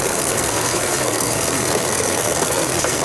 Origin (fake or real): fake